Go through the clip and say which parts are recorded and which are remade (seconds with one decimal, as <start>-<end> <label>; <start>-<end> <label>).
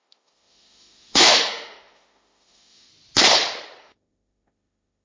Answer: 0.0-2.9 remade; 2.9-3.8 recorded; 3.8-5.0 remade